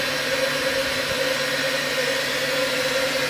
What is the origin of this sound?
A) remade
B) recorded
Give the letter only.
B